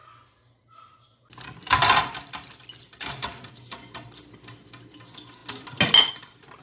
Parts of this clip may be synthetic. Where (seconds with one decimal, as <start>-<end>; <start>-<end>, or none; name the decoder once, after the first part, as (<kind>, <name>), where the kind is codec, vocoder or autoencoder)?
none